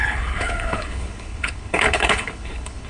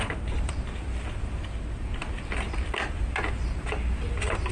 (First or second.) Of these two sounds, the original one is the second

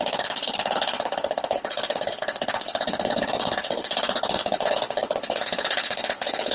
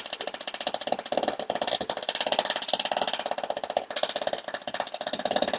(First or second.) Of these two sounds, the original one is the second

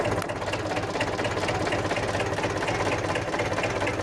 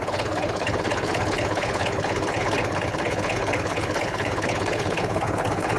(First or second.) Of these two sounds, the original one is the first